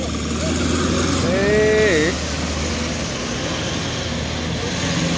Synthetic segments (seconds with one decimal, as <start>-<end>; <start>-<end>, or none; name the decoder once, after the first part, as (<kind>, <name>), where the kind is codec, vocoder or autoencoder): none